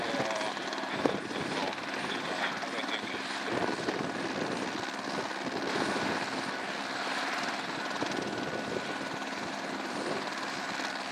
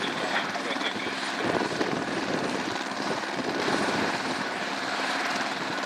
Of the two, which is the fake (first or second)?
second